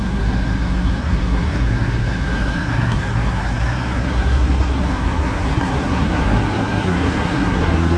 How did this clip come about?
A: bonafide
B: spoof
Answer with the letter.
B